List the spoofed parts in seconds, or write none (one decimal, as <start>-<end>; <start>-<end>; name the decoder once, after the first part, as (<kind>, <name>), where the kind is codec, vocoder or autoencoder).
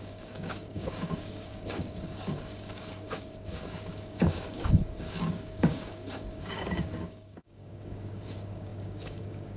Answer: 0.0-9.6 (codec, DAC)